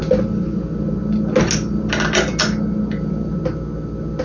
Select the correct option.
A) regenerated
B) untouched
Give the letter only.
B